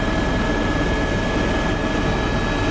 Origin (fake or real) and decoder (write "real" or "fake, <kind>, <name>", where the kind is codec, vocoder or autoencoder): real